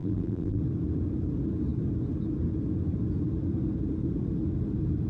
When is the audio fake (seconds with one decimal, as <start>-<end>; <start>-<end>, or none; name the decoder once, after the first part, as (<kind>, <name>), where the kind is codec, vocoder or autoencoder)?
0.0-0.6 (vocoder, BigVGAN v2)